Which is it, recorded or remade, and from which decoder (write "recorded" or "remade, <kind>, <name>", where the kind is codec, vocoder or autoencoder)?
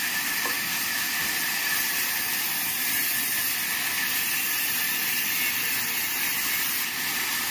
recorded